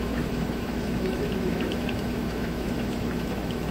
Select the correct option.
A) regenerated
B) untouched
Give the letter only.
A